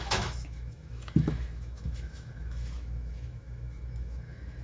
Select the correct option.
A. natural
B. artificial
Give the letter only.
B